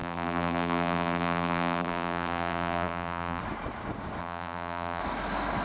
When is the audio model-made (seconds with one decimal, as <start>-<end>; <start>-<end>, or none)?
0.0-3.4; 4.2-5.0